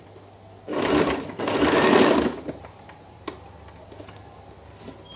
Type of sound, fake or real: real